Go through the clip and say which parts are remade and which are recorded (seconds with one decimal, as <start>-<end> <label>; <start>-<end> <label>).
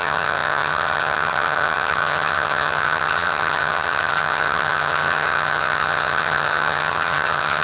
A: 0.0-7.6 remade